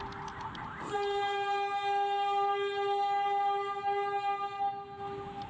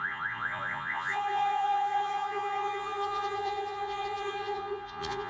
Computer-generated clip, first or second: second